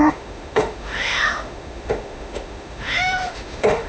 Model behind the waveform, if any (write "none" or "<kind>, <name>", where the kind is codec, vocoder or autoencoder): autoencoder, DAC-VAE